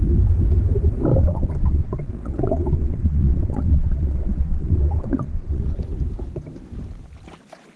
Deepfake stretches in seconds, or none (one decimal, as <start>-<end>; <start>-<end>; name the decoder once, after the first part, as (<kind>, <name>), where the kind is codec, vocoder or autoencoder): 1.1-5.8 (vocoder, WaveNeXt)